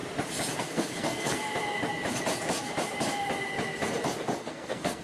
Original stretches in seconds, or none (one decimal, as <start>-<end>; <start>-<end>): 0.0-0.6; 1.4-4.4